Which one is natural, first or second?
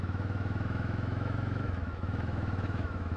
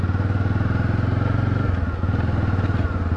second